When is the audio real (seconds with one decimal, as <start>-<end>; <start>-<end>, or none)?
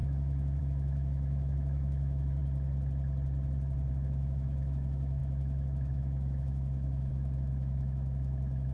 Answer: 2.4-3.9